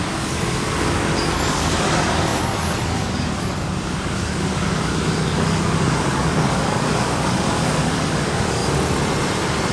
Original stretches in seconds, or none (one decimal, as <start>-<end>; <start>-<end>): 8.6-9.7